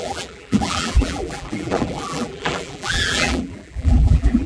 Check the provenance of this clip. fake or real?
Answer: fake